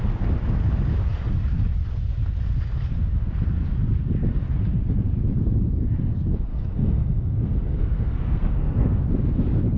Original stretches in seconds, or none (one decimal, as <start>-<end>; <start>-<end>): 0.0-6.5; 9.0-9.8